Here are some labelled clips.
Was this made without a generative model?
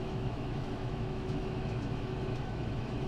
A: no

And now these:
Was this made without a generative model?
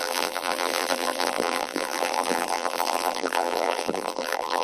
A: no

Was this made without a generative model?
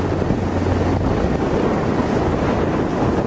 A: yes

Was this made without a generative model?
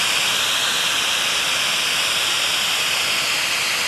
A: yes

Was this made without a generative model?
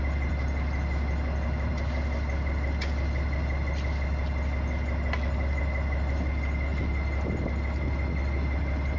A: yes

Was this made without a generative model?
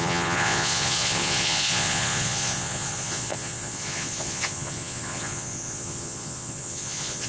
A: no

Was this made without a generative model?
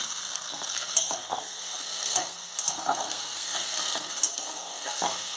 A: no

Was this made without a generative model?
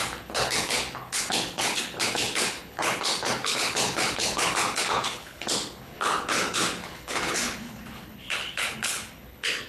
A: no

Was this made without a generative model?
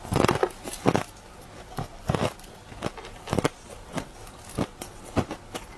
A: yes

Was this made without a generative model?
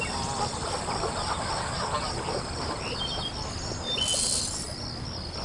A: yes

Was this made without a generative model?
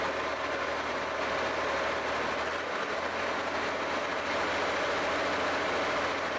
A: yes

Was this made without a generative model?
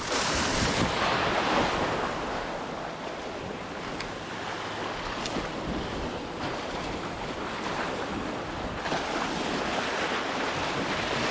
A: yes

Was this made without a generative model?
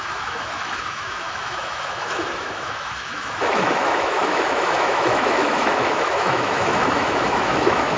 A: no